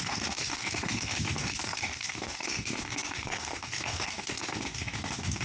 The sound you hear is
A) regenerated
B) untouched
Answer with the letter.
A